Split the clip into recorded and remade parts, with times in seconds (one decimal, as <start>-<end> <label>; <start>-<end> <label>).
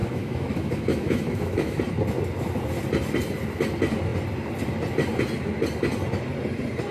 0.0-1.8 remade; 1.8-6.9 recorded